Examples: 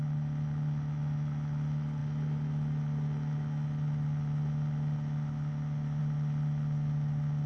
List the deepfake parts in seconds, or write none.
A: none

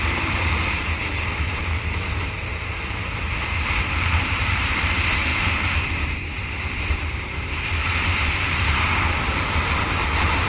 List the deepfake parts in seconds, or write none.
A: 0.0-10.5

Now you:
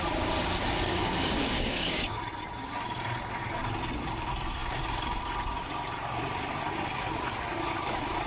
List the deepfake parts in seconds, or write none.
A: 0.9-2.2

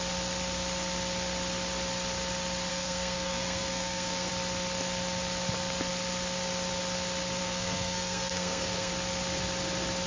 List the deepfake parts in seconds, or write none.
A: 2.7-4.3; 7.4-8.9

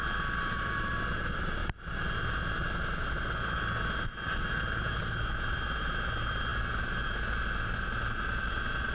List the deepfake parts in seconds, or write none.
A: none

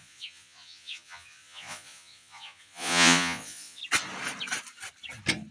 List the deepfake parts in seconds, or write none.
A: 0.0-3.8

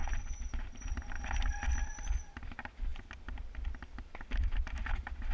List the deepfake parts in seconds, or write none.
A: 0.0-0.5

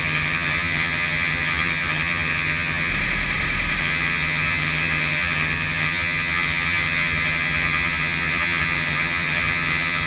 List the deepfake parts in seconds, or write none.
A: 0.0-2.9; 3.8-10.1